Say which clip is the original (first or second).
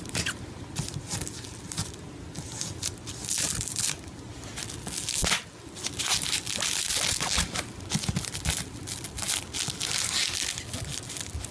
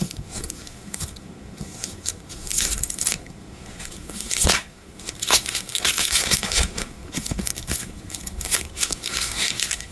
first